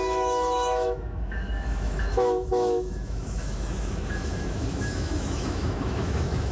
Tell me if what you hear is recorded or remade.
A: remade